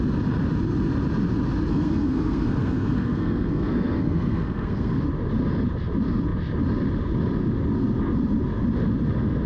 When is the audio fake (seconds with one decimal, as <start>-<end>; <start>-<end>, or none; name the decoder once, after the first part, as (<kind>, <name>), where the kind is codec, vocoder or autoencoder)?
1.7-5.0 (codec, SNAC)